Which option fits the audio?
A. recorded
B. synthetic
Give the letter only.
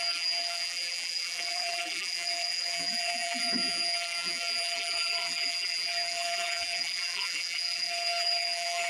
B